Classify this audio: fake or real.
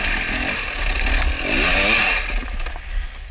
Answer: real